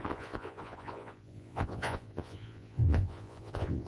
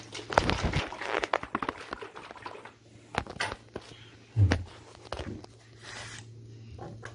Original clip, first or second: second